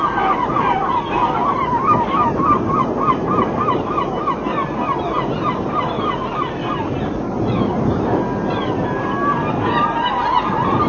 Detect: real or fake real